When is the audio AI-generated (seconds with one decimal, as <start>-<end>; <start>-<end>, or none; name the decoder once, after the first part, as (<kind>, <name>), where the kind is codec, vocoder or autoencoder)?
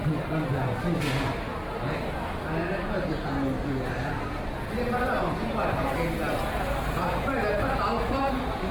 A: none